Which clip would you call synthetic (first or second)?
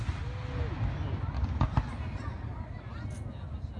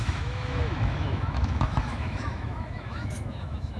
second